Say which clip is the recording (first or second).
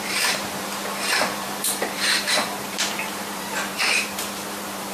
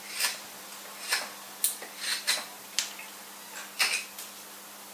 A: second